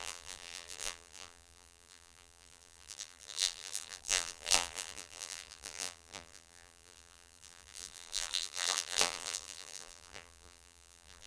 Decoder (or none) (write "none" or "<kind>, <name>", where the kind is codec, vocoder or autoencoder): vocoder, BigVGAN v2